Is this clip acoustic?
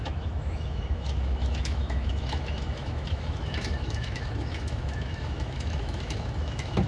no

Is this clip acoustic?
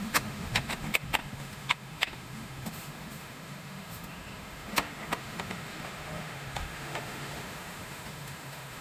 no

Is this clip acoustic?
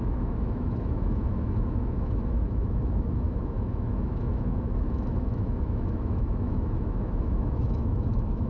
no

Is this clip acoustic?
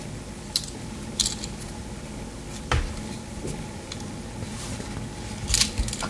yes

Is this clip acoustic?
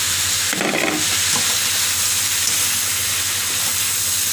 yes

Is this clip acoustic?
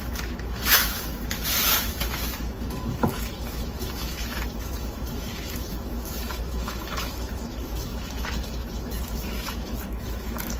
no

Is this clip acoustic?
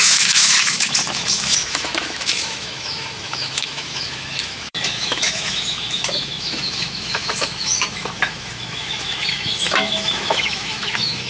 no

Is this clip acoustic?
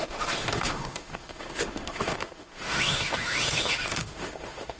no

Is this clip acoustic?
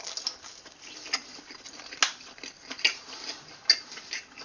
yes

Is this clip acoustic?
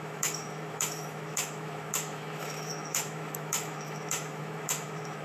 no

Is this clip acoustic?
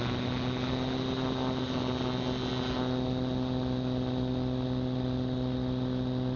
yes